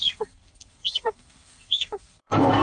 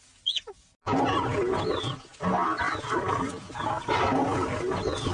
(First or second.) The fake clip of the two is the first